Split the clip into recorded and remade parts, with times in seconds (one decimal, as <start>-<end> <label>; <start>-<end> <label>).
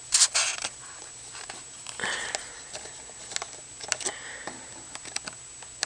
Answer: 0.0-5.9 recorded